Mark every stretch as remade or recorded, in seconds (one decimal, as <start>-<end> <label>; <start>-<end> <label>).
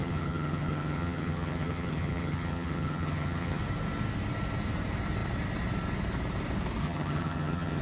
0.0-3.6 remade; 3.6-6.8 recorded; 6.8-7.8 remade